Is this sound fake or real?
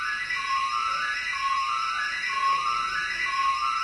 fake